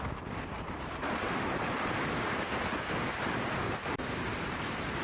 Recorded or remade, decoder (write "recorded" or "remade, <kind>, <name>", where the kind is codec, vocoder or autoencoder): remade, vocoder, BigVGAN v2